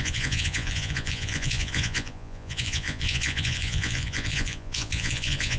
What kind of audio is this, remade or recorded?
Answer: remade